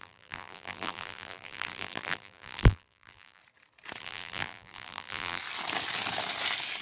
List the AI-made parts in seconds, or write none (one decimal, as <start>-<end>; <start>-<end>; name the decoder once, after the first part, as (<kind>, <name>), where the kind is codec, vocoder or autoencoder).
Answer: 0.0-3.4 (vocoder, BigVGAN v2); 4.0-5.4